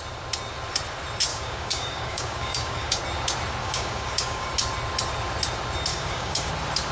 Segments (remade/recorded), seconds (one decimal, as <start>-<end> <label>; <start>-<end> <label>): 0.0-1.3 recorded; 1.3-3.0 remade; 3.0-3.6 recorded; 3.6-4.5 remade; 4.5-5.9 recorded; 5.9-6.5 remade; 6.5-6.9 recorded